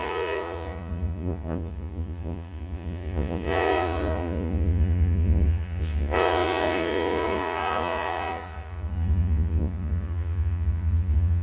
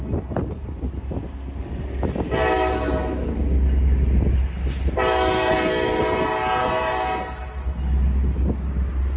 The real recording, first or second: second